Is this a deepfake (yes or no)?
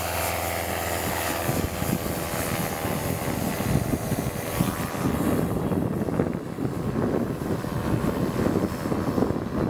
no